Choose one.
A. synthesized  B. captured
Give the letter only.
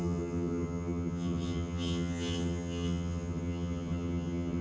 A